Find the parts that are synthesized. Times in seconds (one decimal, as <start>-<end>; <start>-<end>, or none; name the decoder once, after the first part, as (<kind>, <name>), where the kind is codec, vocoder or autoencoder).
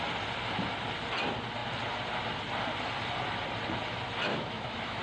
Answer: 4.3-5.0 (autoencoder, DAC-VAE)